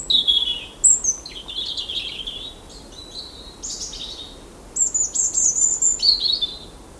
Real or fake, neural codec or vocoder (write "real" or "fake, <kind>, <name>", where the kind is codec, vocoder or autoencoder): real